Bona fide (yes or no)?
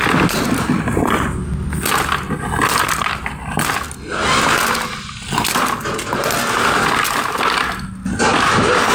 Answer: yes